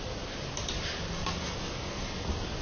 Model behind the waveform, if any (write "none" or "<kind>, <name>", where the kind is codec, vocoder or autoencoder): none